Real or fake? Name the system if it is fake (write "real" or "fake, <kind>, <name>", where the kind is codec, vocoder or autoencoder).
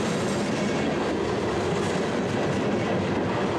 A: real